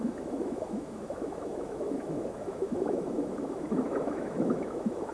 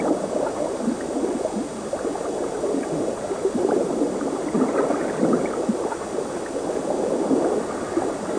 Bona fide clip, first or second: second